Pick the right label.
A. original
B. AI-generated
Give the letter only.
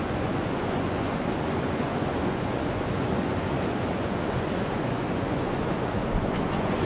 B